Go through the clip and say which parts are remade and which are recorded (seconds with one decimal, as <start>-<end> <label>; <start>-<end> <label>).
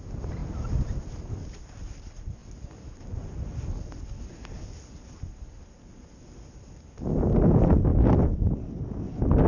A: 0.0-9.5 recorded